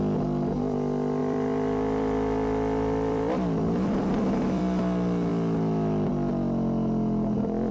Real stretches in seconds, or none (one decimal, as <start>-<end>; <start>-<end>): 0.0-1.2; 4.6-7.7